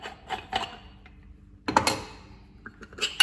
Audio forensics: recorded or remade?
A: recorded